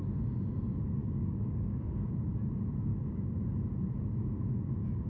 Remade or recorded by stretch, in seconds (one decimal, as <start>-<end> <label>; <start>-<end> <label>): 0.0-1.0 recorded; 1.0-2.1 remade; 2.1-2.9 recorded; 2.9-3.4 remade; 3.4-5.1 recorded